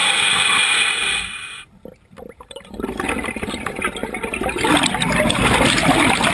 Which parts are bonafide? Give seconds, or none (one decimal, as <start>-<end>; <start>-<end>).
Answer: 0.0-6.3